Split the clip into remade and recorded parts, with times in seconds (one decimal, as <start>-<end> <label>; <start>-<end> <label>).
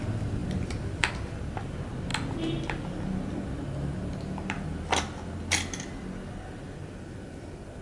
0.0-7.8 recorded